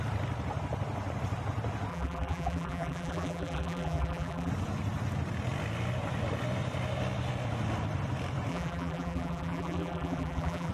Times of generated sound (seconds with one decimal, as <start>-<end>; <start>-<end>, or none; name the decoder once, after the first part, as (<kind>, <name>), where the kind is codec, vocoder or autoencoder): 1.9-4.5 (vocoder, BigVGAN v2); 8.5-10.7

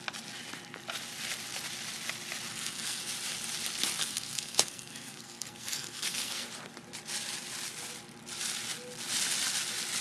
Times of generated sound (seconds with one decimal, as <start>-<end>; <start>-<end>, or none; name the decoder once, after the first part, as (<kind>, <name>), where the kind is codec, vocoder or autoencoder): 2.5-3.1 (codec, SNAC); 4.0-6.5

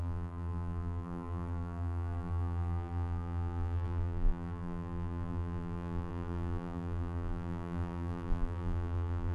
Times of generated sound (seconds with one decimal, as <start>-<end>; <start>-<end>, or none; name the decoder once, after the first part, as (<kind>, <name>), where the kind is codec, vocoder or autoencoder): 0.0-9.3 (vocoder, BigVGAN v2)